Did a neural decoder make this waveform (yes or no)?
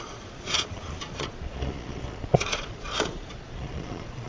yes